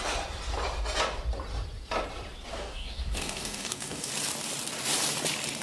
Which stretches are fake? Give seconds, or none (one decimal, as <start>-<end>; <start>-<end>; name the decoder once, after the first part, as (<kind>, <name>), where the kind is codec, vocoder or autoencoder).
2.5-4.1 (codec, DAC)

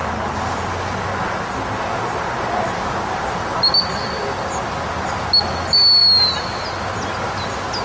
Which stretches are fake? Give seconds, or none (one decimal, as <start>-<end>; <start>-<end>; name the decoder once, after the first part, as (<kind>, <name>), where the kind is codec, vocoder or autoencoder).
none

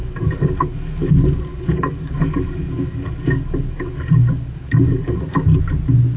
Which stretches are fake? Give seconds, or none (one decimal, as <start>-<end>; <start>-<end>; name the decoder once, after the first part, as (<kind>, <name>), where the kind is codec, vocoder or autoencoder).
0.0-1.1 (codec, DAC); 1.5-5.2

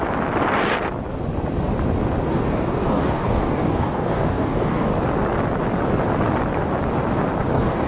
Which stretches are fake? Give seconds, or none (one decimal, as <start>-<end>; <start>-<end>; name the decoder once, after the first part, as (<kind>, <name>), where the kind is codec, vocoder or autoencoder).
2.3-4.9 (codec, DAC); 7.5-7.9

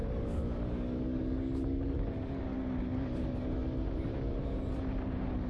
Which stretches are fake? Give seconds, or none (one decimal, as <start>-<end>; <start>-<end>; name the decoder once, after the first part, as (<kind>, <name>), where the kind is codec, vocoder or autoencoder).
0.0-3.3 (codec, DAC)

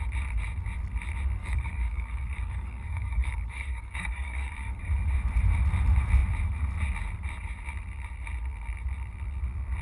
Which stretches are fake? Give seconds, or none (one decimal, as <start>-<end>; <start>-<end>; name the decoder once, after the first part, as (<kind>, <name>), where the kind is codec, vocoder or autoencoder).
1.4-4.9 (codec, DAC)

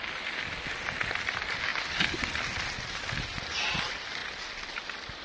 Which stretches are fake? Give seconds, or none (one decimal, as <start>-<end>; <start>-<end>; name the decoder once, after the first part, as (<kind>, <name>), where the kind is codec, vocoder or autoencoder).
none